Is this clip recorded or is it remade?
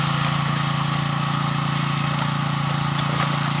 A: recorded